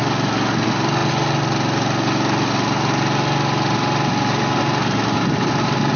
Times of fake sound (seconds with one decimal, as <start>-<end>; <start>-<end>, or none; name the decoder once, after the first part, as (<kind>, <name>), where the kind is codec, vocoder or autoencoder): none